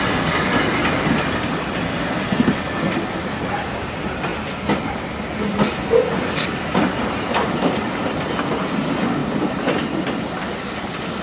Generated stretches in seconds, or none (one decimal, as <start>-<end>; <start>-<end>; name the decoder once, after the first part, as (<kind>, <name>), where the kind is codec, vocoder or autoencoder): none